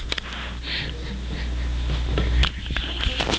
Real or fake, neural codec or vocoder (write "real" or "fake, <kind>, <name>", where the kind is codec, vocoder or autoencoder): real